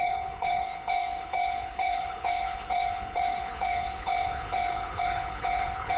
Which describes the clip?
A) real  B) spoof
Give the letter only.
B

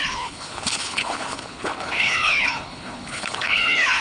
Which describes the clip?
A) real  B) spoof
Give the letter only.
B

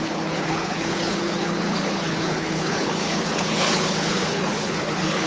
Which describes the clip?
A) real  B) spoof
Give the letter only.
B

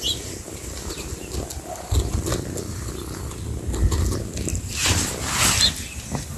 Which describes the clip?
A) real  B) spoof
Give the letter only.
A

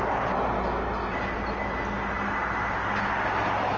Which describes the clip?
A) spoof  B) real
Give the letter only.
B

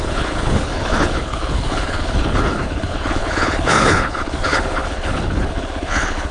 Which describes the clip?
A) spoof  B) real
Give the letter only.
A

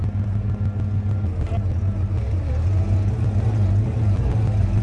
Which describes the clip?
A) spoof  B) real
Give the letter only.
B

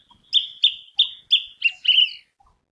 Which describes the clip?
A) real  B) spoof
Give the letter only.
A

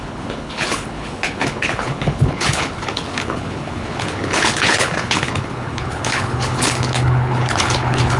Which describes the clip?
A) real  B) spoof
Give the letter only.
B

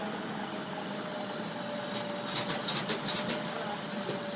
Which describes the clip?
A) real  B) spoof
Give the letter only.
A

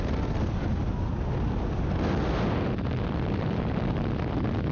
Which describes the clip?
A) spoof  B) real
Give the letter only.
B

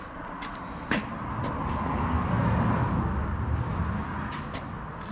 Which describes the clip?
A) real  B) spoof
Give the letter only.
A